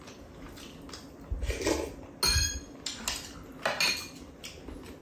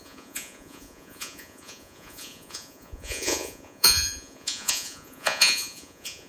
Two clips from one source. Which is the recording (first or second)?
first